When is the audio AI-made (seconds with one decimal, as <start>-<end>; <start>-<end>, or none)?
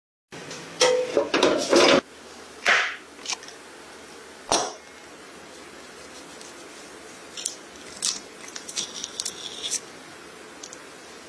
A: none